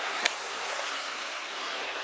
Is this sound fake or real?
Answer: fake